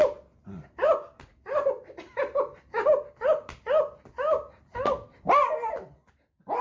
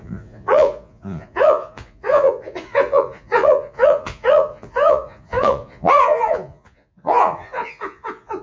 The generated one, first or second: second